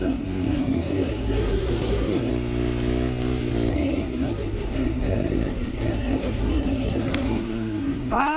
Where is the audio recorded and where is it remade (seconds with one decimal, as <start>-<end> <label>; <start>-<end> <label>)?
0.0-2.3 remade; 2.3-3.7 recorded; 3.7-8.4 remade